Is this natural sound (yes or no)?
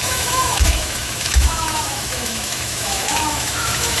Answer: no